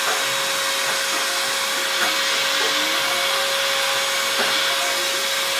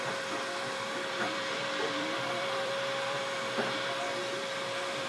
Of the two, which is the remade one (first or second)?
second